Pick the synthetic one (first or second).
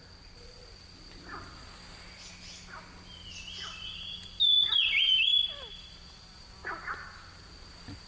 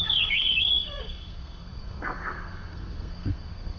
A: second